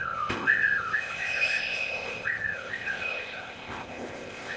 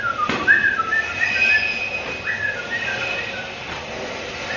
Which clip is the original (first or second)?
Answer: second